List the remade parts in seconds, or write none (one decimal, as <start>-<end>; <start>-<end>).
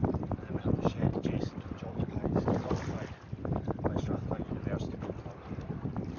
none